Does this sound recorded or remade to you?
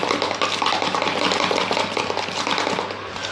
recorded